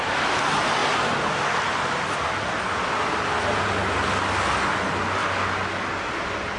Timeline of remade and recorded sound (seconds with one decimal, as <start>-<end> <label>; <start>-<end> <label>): 0.0-6.6 recorded